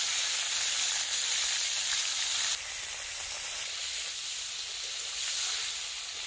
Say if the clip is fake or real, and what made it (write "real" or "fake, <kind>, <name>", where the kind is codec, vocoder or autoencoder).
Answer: real